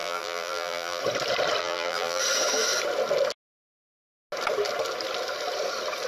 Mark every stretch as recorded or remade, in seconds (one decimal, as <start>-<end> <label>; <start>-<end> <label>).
0.0-1.0 remade; 1.0-1.6 recorded; 1.6-2.2 remade; 2.2-6.1 recorded